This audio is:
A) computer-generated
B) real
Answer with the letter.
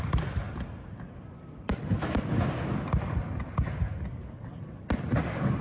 B